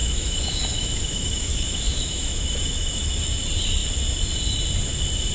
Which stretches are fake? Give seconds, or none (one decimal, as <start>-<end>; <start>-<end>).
0.0-3.2